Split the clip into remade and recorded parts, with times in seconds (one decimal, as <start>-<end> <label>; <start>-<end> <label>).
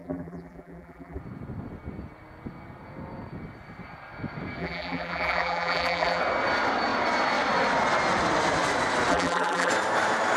0.0-1.2 remade; 1.2-4.6 recorded; 4.6-6.2 remade; 6.2-9.1 recorded; 9.1-9.7 remade; 9.7-10.4 recorded